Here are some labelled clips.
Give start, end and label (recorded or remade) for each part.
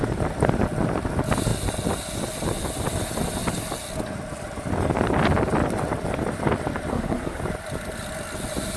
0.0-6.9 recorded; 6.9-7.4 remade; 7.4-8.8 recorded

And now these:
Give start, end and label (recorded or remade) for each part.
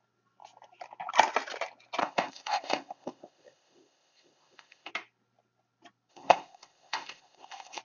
0.0-2.0 recorded; 2.0-4.9 remade; 4.9-6.1 recorded; 6.1-7.8 remade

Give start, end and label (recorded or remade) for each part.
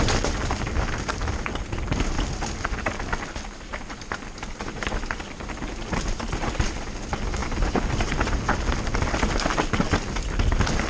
0.0-3.7 recorded; 3.7-5.2 remade; 5.2-10.9 recorded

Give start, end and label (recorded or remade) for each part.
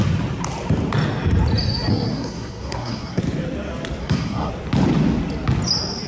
0.0-1.9 recorded; 1.9-3.2 remade; 3.2-4.0 recorded; 4.0-4.5 remade; 4.5-6.1 recorded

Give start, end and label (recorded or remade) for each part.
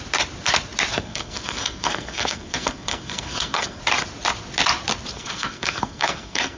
0.0-0.9 recorded; 0.9-3.8 remade; 3.8-5.1 recorded; 5.1-6.6 remade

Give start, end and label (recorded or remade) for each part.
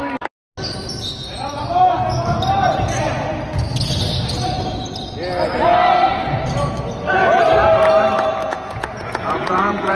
0.0-8.4 recorded; 8.4-9.9 remade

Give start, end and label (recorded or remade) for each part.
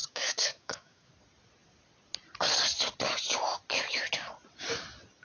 0.0-1.1 remade; 1.1-5.2 recorded